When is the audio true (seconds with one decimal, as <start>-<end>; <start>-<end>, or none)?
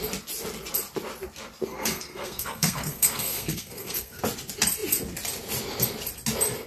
0.0-1.7; 4.2-6.7